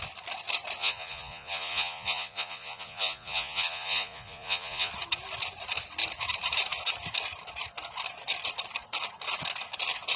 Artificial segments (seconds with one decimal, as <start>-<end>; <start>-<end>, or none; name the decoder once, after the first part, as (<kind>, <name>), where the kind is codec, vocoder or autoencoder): 0.8-4.9 (vocoder, Vocos)